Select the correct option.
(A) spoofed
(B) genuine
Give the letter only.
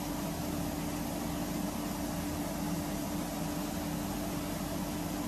B